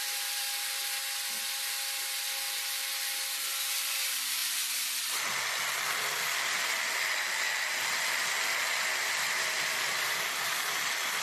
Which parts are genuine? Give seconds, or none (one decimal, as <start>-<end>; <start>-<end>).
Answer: 0.8-1.6; 4.4-8.9